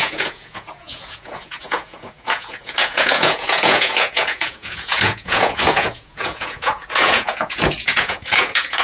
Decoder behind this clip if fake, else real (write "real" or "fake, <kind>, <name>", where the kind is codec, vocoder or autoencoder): fake, vocoder, Vocos